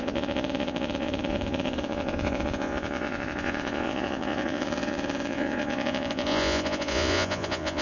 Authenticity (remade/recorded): remade